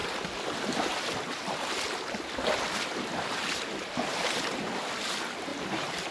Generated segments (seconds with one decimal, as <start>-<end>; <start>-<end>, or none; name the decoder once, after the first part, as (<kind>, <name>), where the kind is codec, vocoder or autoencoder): 4.1-4.7 (vocoder, BigVGAN v2); 5.5-6.1